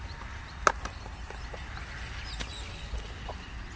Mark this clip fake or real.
real